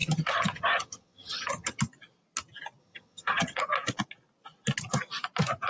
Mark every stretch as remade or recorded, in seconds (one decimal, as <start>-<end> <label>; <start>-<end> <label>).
0.0-1.8 remade; 1.8-2.8 recorded; 2.8-3.6 remade; 3.6-5.7 recorded